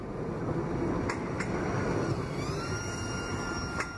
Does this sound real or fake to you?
real